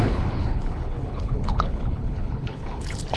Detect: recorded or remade remade